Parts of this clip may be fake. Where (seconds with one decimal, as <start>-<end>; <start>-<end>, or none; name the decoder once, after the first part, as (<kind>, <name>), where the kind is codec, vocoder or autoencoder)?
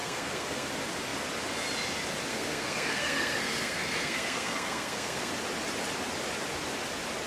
0.0-0.7 (codec, SNAC); 2.3-5.3